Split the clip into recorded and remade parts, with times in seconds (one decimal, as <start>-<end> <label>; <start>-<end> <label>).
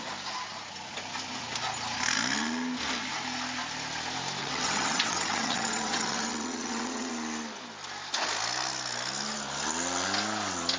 0.0-4.4 recorded; 4.4-7.1 remade; 7.1-10.8 recorded